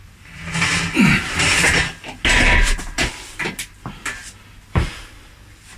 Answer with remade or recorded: recorded